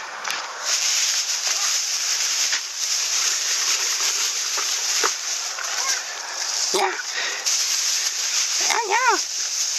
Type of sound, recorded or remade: remade